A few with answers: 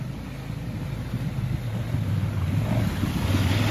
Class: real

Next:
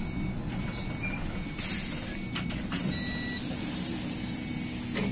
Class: real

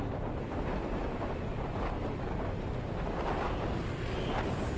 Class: real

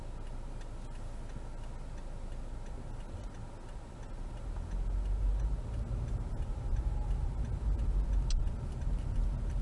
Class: real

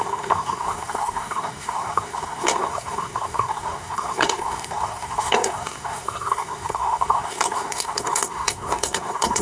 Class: fake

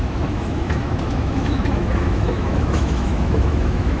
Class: fake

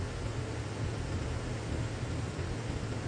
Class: real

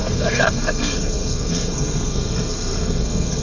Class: fake